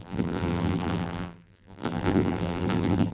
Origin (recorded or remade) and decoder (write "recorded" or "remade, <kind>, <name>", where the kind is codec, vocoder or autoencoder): remade, vocoder, BigVGAN v2